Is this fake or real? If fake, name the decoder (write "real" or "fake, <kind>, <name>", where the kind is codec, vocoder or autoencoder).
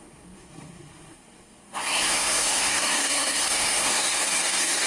fake, codec, SNAC